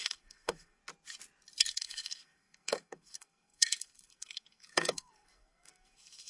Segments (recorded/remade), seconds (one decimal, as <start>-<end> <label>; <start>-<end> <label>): 0.0-0.8 remade; 0.8-1.7 recorded; 1.7-6.3 remade